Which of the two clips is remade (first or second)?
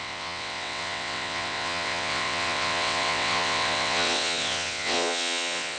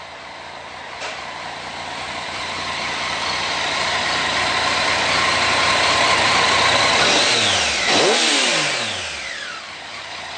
first